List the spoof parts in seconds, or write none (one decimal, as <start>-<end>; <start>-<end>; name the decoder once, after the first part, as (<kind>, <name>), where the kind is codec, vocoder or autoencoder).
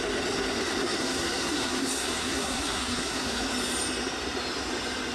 0.8-3.4 (codec, SNAC)